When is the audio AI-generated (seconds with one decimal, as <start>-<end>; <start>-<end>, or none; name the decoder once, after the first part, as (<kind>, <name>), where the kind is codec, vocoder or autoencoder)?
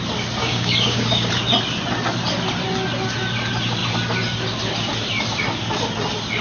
0.4-1.3 (codec, DAC)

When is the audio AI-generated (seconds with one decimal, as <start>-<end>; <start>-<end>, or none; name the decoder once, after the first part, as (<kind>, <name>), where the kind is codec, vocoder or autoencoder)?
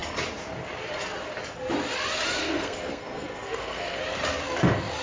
2.4-4.0 (codec, SNAC)